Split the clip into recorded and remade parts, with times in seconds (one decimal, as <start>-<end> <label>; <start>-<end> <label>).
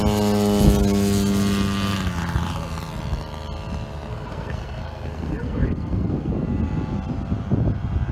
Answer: 0.0-4.1 recorded; 4.1-6.3 remade; 6.3-8.1 recorded